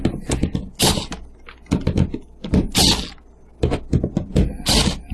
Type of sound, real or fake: real